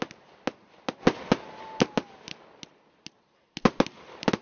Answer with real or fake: real